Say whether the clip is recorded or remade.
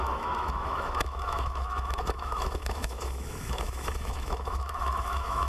remade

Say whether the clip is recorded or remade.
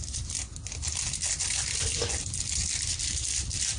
remade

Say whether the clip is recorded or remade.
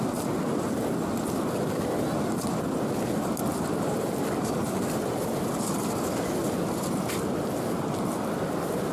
recorded